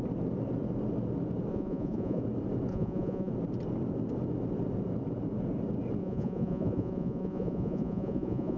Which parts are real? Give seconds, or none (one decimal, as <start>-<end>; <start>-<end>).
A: 0.0-1.5; 2.2-2.7; 3.3-6.0